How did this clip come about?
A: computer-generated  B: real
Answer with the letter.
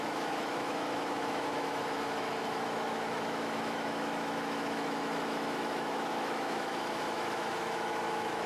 A